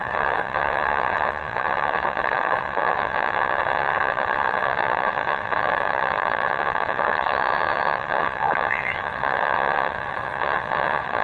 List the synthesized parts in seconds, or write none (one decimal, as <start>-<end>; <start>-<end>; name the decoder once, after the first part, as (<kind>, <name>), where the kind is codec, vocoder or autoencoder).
0.0-11.2 (vocoder, WaveNeXt)